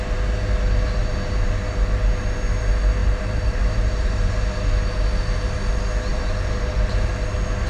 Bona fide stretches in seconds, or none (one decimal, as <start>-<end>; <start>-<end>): 0.0-3.0; 4.3-6.1; 7.1-7.7